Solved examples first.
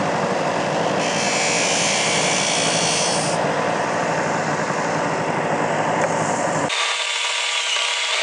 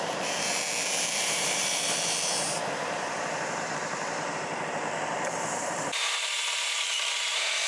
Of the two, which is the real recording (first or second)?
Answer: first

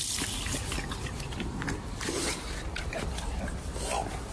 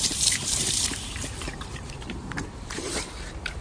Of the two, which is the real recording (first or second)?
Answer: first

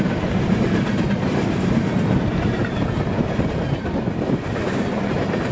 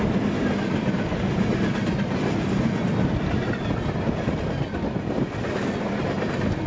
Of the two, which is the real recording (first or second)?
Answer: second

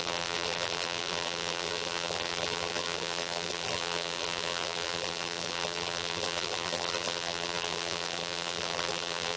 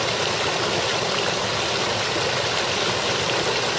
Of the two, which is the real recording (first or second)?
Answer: second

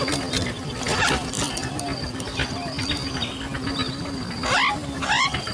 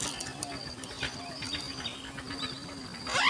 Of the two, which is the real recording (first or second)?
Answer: second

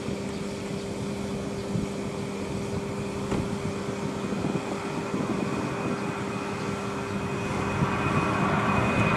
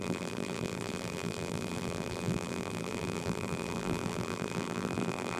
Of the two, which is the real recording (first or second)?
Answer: first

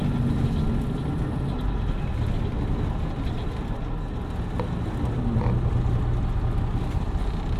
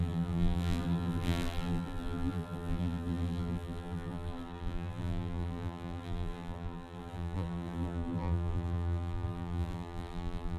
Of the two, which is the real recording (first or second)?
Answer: first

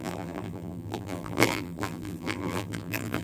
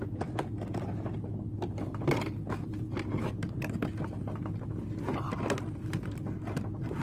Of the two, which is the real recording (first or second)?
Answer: second